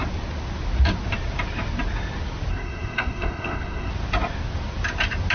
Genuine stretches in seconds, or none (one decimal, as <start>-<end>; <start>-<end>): 0.0-2.5; 3.9-5.3